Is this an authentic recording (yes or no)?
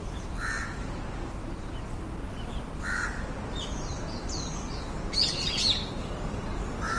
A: yes